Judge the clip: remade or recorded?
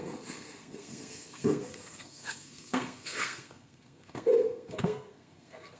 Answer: remade